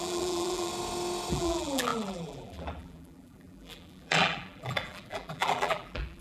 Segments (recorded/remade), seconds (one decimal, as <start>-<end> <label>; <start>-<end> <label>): 0.0-0.7 remade; 0.7-1.3 recorded; 1.3-6.2 remade